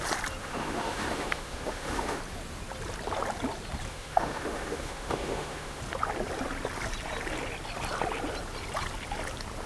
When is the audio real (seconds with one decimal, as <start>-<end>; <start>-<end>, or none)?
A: 0.0-0.4; 2.2-3.9; 5.8-9.7